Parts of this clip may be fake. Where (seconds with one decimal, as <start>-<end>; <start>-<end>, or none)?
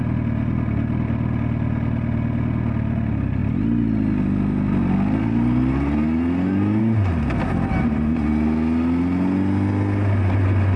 none